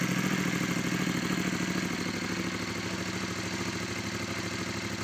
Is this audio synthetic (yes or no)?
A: no